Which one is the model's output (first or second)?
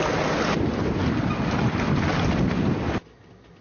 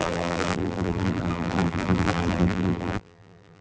second